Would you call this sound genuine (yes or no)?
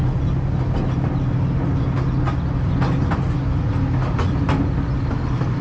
yes